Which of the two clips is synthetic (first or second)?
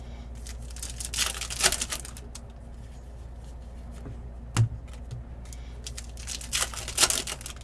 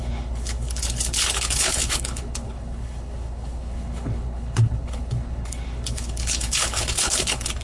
second